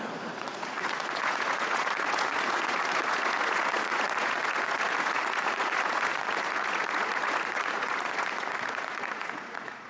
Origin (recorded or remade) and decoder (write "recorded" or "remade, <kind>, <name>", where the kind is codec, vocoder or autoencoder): remade, vocoder, Vocos